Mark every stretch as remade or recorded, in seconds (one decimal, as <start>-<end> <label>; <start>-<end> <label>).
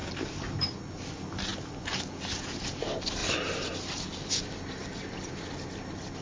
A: 0.0-1.0 remade; 1.0-3.2 recorded; 3.2-5.5 remade; 5.5-6.2 recorded